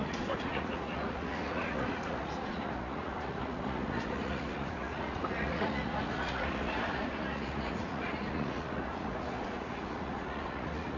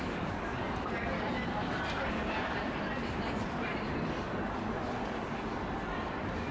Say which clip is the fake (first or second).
first